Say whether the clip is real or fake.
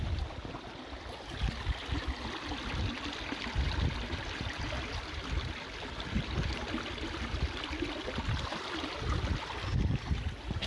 real